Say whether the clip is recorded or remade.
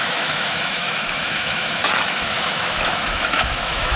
remade